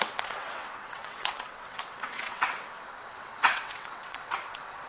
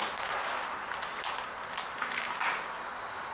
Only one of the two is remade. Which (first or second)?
first